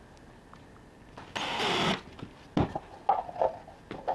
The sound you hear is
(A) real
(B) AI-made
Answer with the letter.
A